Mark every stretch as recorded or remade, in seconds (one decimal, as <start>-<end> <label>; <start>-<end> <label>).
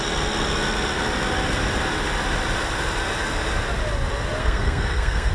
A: 0.0-4.4 recorded; 4.4-5.3 remade